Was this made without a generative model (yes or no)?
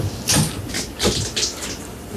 yes